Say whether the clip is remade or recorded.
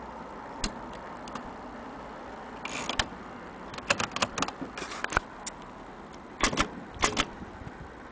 recorded